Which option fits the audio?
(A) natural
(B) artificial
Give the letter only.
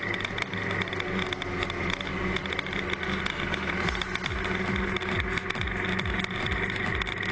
A